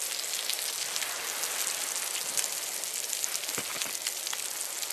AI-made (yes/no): no